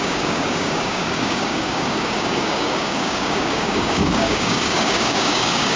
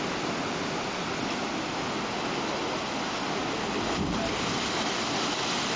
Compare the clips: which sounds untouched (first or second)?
second